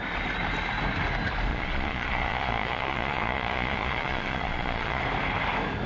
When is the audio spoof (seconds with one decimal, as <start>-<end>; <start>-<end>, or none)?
1.5-5.0